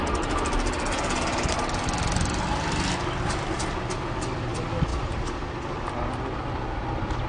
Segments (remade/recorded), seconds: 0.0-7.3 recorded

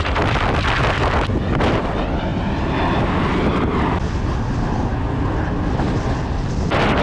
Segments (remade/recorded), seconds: 0.0-7.0 recorded